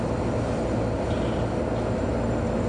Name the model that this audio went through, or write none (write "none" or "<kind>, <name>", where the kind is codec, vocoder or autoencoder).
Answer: none